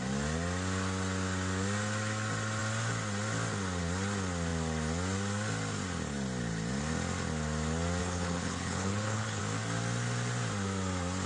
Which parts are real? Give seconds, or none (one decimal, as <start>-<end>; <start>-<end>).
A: 0.0-8.0; 9.4-11.3